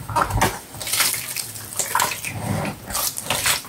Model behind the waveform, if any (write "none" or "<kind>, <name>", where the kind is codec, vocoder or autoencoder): none